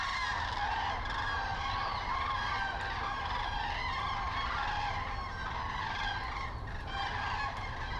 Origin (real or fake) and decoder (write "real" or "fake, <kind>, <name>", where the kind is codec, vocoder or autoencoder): real